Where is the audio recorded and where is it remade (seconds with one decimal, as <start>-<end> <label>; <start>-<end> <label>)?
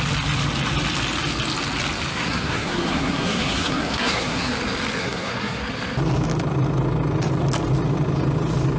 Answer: 0.0-2.1 recorded; 2.1-4.5 remade; 4.5-5.0 recorded; 5.0-5.6 remade; 5.6-8.8 recorded